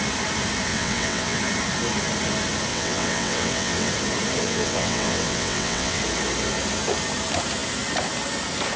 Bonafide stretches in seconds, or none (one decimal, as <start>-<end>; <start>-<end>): 0.0-0.7; 1.4-2.7; 3.9-4.4; 6.0-8.8